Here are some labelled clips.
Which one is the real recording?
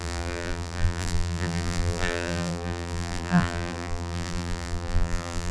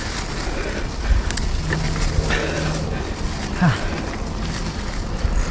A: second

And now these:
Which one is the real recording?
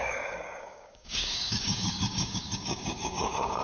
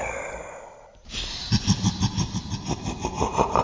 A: second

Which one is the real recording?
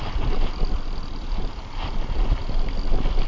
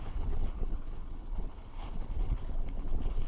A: first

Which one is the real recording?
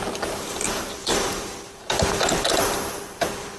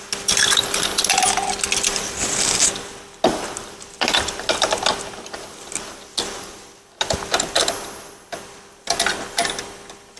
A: second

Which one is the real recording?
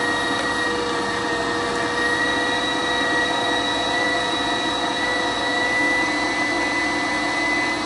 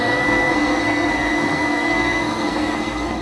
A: first